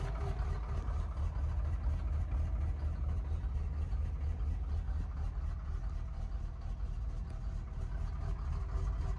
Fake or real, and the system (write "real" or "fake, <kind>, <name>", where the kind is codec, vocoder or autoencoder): real